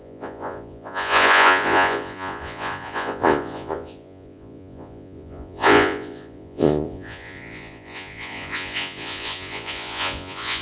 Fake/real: fake